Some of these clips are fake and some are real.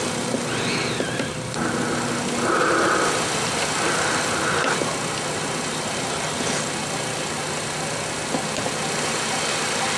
real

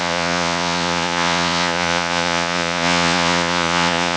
fake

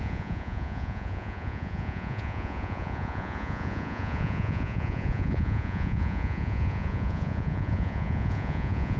fake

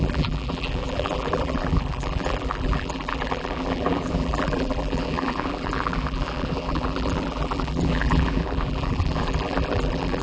fake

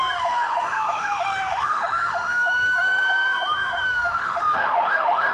fake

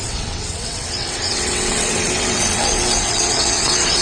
fake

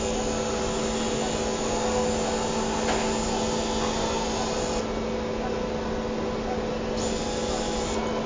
real